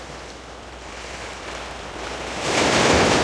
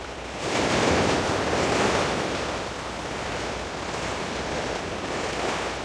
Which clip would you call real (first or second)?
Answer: first